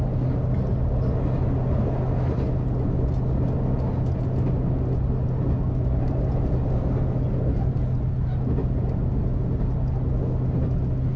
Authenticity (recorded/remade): recorded